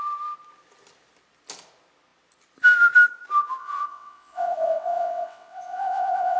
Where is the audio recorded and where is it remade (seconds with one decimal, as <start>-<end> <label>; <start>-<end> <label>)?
0.0-3.6 recorded; 3.6-6.4 remade